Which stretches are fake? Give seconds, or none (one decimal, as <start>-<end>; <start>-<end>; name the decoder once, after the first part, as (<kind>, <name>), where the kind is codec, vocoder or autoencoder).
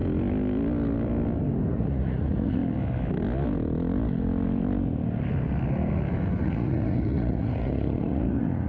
1.7-2.6 (vocoder, Vocos); 6.4-8.7